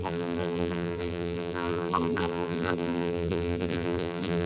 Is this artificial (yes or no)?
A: yes